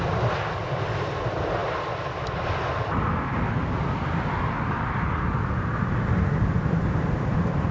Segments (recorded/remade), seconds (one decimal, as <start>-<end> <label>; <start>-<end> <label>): 0.0-7.7 recorded